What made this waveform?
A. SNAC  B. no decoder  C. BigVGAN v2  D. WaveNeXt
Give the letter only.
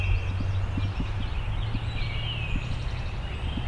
B